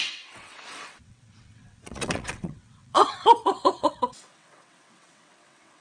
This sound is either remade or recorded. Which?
remade